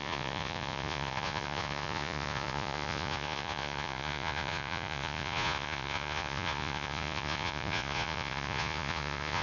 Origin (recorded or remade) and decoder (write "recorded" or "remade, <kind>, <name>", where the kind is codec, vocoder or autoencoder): remade, vocoder, Vocos